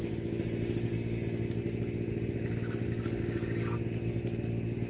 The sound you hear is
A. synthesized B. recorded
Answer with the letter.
B